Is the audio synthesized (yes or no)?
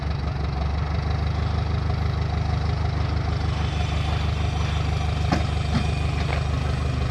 no